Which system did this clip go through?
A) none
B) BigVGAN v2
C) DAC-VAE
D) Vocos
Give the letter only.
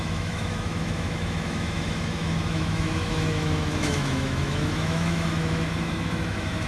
C